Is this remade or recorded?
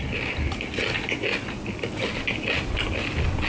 recorded